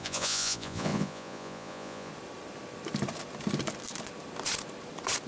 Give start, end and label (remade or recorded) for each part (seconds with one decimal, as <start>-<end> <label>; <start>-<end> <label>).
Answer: 0.0-2.1 remade; 2.1-5.3 recorded

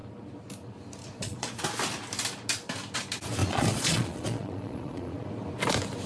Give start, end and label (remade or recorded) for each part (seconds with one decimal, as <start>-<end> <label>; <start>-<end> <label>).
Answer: 0.0-1.0 recorded; 1.0-1.6 remade; 1.6-3.4 recorded; 3.4-5.3 remade; 5.3-6.1 recorded

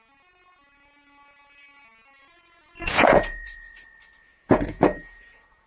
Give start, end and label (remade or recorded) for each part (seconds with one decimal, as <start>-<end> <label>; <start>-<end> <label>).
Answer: 0.0-2.2 recorded; 2.2-5.7 remade

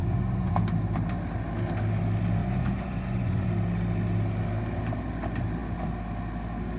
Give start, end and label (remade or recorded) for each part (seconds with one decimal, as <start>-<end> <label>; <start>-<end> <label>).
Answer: 0.0-0.5 remade; 0.5-2.4 recorded; 2.4-3.5 remade; 3.5-6.8 recorded